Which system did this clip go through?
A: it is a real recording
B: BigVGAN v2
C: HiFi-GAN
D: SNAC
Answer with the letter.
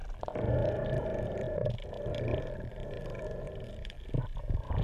B